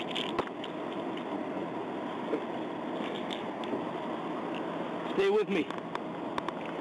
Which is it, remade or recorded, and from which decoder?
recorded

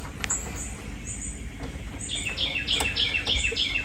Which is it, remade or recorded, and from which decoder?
recorded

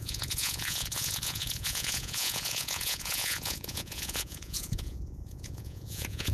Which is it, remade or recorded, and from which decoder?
remade, vocoder, Vocos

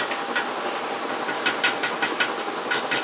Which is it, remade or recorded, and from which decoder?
recorded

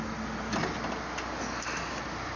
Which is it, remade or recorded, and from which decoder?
recorded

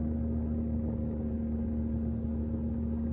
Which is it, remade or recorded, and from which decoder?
recorded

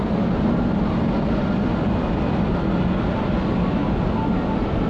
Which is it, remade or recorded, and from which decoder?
recorded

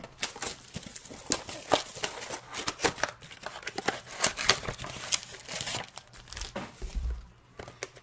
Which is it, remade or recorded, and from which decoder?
recorded